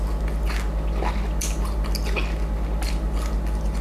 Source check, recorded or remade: recorded